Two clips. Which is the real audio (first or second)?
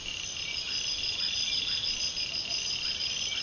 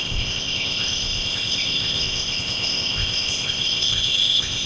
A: first